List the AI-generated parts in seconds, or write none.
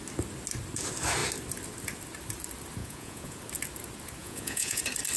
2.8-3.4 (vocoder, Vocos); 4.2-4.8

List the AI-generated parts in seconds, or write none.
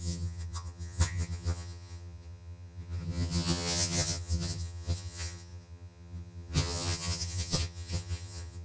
0.0-8.6 (vocoder, HiFi-GAN)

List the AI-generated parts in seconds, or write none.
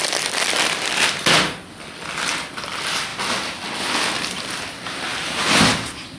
5.1-5.6 (vocoder, BigVGAN v2)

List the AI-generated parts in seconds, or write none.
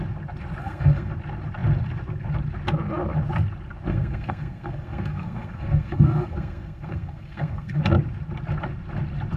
0.6-1.1 (codec, SNAC); 3.9-7.8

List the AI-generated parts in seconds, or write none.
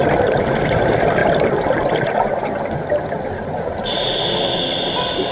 none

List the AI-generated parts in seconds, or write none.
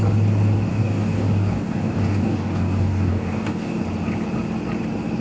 0.7-3.8 (codec, DAC)